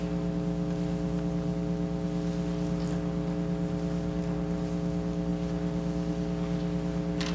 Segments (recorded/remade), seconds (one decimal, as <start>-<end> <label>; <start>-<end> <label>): 0.0-7.3 recorded